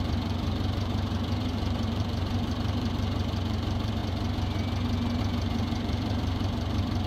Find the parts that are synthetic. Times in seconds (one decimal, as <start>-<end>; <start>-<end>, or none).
0.0-4.0; 5.2-7.1